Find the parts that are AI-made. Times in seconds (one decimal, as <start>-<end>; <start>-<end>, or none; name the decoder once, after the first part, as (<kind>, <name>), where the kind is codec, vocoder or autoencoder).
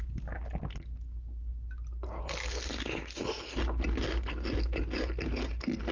none